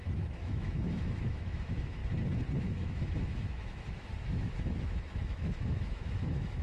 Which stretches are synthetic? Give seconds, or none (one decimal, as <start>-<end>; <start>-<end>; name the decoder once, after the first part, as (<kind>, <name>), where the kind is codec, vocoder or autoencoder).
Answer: 0.0-2.0 (autoencoder, DAC-VAE); 2.6-6.6